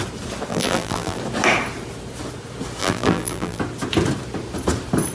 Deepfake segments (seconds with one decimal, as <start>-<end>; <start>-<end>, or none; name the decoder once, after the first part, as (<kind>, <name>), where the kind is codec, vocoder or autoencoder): 0.5-1.2 (vocoder, BigVGAN v2); 2.8-3.6